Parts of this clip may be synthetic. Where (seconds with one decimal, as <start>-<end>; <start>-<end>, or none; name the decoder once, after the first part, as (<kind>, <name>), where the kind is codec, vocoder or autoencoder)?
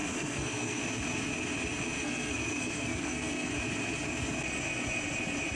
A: 0.0-0.8 (codec, SNAC); 2.0-3.5